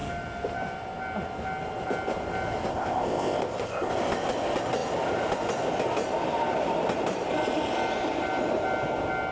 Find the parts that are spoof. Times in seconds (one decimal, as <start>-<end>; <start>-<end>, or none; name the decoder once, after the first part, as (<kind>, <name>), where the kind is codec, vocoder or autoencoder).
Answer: 2.7-3.9 (codec, ZipCodec)